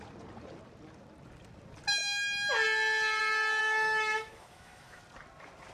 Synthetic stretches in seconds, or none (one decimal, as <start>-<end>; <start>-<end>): 3.6-5.0